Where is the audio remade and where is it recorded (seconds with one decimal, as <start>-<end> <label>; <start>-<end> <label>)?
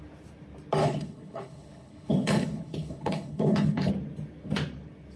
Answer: 0.0-0.8 recorded; 0.8-3.9 remade; 3.9-5.2 recorded